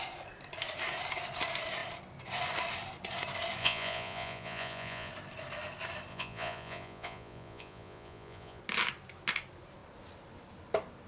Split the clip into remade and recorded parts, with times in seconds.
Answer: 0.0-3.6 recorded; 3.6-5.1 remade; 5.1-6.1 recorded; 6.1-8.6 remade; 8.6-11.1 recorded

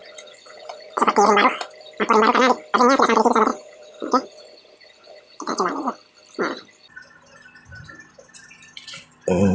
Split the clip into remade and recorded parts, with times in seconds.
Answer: 0.0-1.1 remade; 1.1-3.5 recorded; 3.5-5.9 remade; 5.9-9.5 recorded

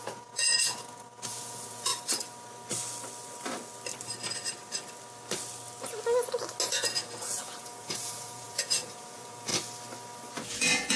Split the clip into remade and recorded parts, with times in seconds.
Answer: 0.0-1.9 remade; 1.9-6.7 recorded; 6.7-9.5 remade; 9.5-10.5 recorded; 10.5-11.0 remade

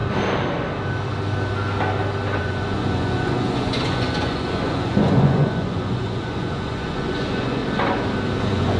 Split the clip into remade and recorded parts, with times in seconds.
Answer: 0.0-2.4 recorded; 2.4-7.6 remade; 7.6-8.4 recorded; 8.4-8.8 remade

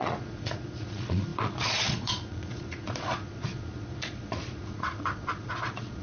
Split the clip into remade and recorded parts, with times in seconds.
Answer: 0.0-6.0 remade

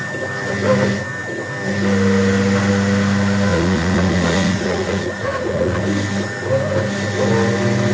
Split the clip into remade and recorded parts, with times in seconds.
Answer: 0.0-3.5 recorded; 3.5-5.8 remade; 5.8-7.9 recorded

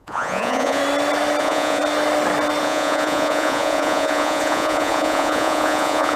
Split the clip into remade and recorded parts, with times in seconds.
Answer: 0.0-0.8 remade; 0.8-1.4 recorded; 1.4-1.8 remade; 1.8-2.6 recorded; 2.6-6.2 remade